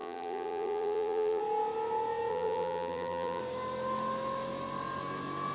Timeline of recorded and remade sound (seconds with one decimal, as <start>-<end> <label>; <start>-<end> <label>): 0.0-1.4 remade; 1.4-2.3 recorded; 2.3-3.4 remade; 3.4-5.5 recorded